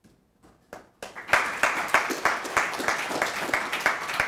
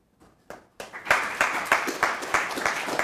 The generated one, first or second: second